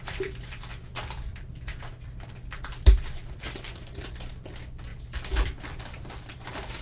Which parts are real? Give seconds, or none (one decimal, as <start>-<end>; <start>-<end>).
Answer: 4.9-5.8